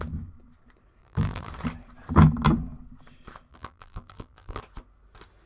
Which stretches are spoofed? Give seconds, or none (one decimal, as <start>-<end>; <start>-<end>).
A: 1.0-1.5; 3.5-4.6